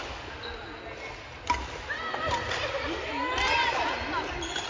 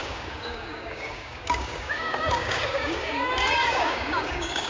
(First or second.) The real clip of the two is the first